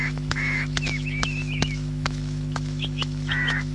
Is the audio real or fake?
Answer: fake